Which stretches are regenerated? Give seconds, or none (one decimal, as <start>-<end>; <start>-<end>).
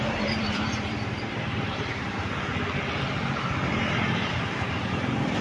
0.0-2.5; 4.1-5.4